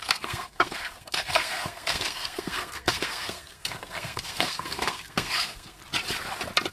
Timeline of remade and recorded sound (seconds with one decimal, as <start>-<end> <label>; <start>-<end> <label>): 0.0-5.8 remade; 5.8-6.7 recorded